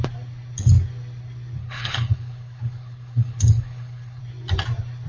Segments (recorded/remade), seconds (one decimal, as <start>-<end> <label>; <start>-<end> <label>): 0.0-1.6 recorded; 1.6-4.2 remade; 4.2-5.1 recorded